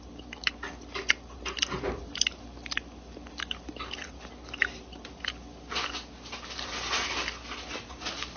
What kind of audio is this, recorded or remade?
recorded